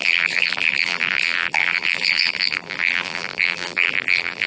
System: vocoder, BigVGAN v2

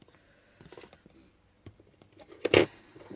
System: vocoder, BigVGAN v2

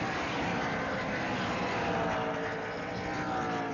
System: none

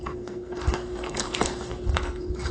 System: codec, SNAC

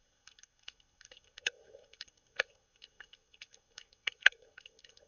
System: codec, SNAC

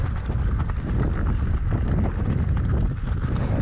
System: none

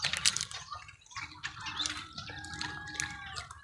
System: none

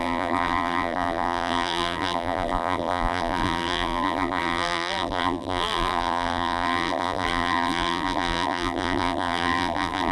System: vocoder, BigVGAN v2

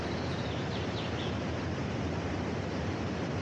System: vocoder, BigVGAN v2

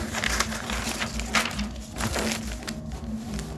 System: none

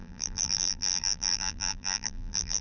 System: vocoder, BigVGAN v2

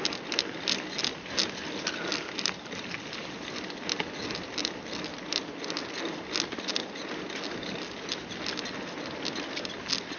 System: none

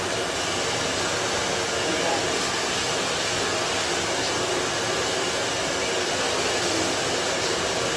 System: none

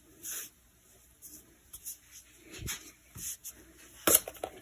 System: none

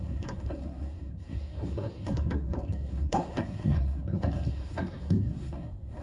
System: codec, SNAC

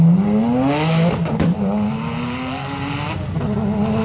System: none